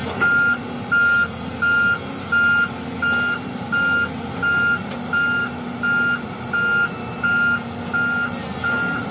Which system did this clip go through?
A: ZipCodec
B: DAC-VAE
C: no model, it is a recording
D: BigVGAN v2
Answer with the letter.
C